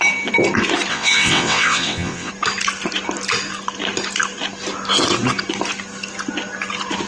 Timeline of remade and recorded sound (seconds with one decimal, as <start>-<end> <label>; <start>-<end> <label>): 0.0-0.9 recorded; 0.9-2.3 remade; 2.3-7.1 recorded